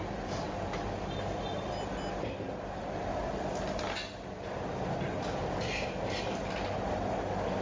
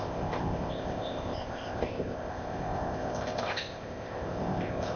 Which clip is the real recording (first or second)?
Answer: first